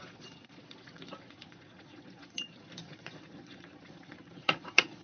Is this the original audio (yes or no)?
no